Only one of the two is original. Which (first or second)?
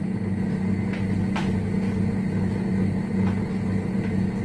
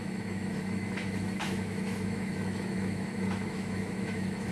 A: first